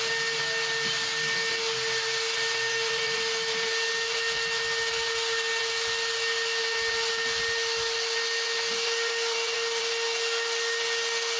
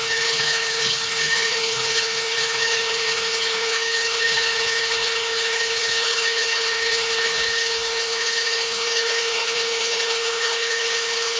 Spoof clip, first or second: second